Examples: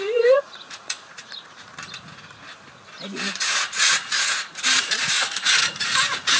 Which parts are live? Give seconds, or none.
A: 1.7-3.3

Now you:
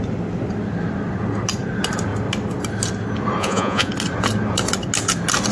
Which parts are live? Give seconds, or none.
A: 0.0-3.4; 3.9-5.5